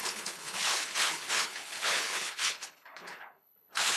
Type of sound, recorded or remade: remade